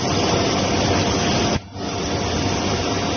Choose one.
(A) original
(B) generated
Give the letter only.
A